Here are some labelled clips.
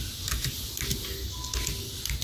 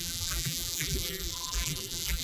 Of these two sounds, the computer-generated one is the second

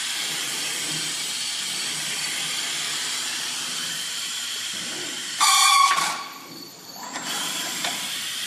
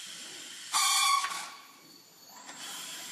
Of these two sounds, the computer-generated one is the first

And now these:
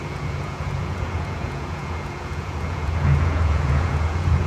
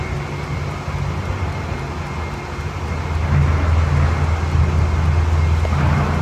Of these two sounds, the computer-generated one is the first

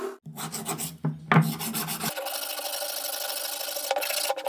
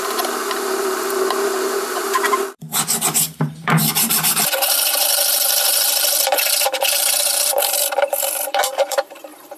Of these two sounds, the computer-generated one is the second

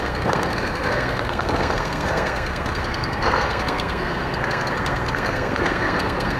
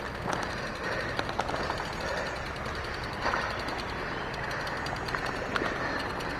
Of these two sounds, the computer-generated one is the first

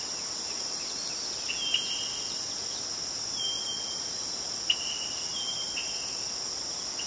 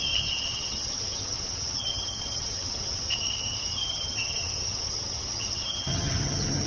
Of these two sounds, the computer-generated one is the second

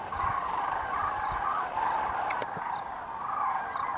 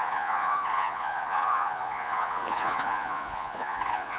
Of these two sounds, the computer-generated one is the second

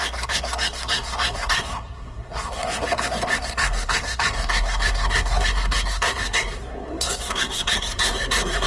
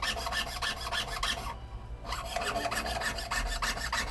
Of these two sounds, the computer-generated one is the first